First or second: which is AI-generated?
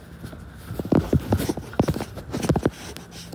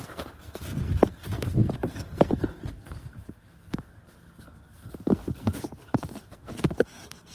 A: second